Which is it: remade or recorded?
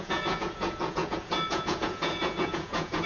remade